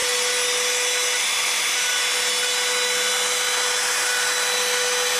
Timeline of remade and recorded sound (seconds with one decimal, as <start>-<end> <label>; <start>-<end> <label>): 0.0-5.2 recorded